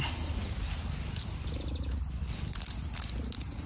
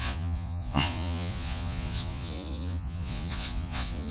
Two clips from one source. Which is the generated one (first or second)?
second